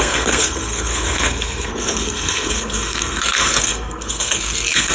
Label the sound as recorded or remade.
remade